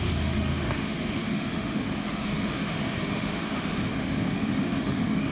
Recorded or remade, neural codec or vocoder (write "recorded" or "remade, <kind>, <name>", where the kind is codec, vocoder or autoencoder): remade, autoencoder, DAC-VAE